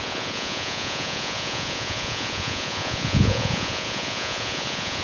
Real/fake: fake